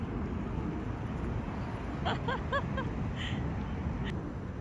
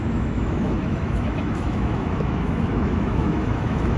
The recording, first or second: first